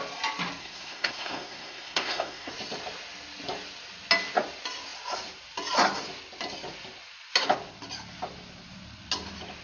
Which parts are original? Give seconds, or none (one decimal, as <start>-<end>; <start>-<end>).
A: 0.0-0.6; 2.5-9.6